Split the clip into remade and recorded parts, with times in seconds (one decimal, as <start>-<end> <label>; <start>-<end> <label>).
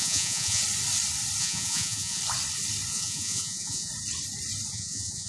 0.0-0.6 remade; 0.6-1.4 recorded; 1.4-2.2 remade; 2.2-2.9 recorded; 2.9-3.9 remade; 3.9-4.7 recorded; 4.7-5.3 remade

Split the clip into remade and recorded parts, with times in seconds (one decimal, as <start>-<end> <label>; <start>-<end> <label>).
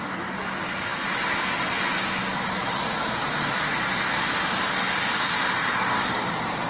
0.0-6.7 recorded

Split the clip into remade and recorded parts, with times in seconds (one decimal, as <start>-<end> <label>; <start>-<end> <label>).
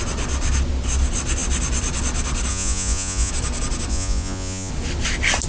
0.0-2.5 recorded; 2.5-3.3 remade; 3.3-3.9 recorded; 3.9-4.7 remade; 4.7-5.5 recorded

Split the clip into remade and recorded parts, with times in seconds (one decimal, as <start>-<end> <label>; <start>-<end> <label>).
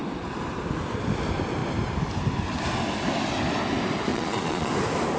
0.0-4.1 recorded; 4.1-4.7 remade; 4.7-5.2 recorded